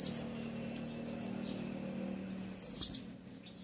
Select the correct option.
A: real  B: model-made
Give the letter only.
A